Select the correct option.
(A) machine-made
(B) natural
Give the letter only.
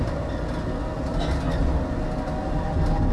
B